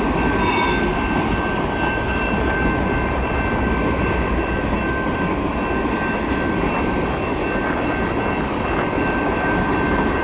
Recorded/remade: recorded